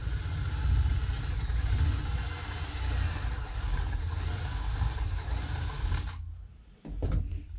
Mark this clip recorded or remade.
recorded